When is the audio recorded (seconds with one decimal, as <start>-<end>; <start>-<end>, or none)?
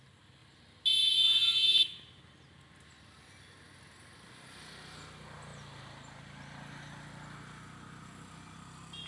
0.0-9.1